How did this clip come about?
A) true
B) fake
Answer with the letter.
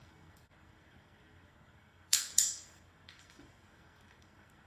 B